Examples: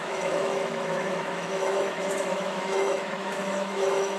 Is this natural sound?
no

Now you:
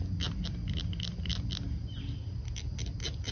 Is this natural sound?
yes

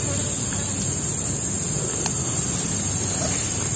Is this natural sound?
yes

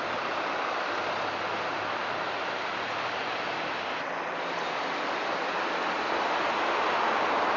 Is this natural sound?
yes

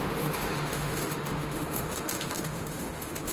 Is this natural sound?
no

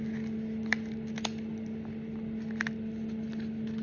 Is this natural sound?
yes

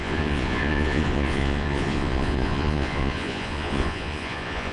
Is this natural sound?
no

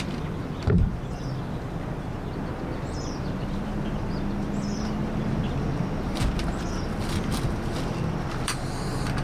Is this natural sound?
no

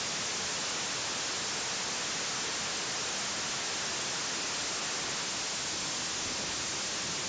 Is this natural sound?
yes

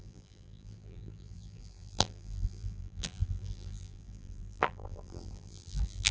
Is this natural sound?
no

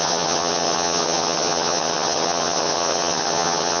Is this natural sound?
no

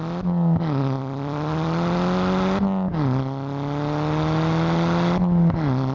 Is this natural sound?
yes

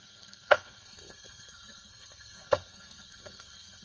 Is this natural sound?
no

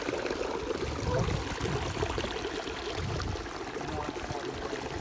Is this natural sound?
yes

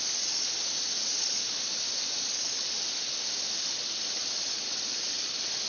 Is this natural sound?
yes